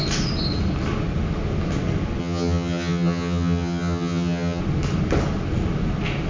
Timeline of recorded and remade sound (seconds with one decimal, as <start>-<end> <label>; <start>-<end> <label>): 0.0-2.2 recorded; 2.2-4.6 remade; 4.6-6.3 recorded